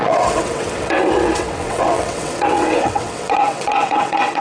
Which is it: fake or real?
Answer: fake